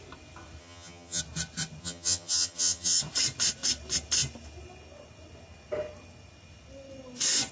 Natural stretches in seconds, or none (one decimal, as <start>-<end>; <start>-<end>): 0.0-0.6; 1.2-1.8; 3.0-7.5